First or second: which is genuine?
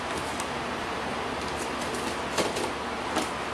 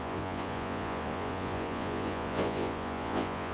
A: first